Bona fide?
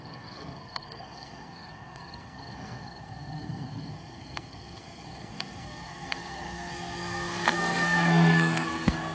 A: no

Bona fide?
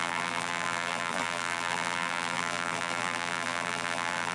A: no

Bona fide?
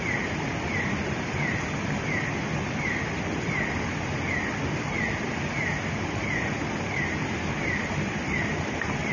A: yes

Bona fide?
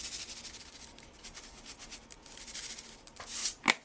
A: yes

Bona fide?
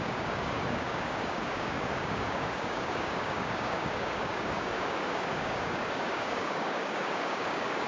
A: no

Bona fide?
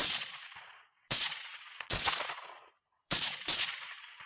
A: no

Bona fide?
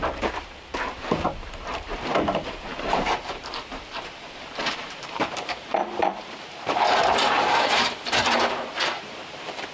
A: no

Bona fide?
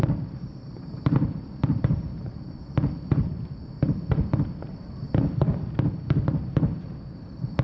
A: no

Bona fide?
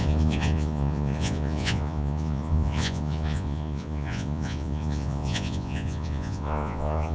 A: no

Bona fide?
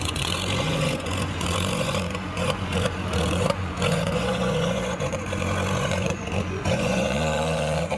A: no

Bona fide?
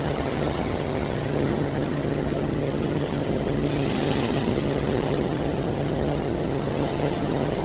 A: no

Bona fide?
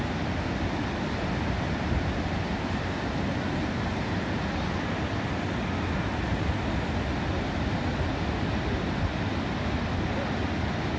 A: yes